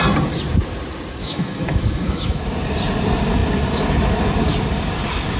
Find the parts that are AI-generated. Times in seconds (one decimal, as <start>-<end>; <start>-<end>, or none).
1.2-2.4